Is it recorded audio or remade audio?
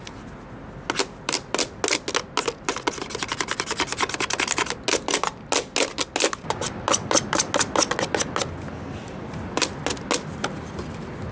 recorded